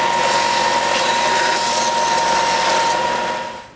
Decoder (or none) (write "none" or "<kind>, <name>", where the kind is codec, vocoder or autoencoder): vocoder, BigVGAN v2